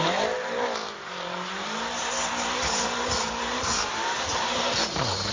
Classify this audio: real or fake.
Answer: fake